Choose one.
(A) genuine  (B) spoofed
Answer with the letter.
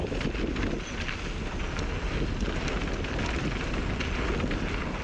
A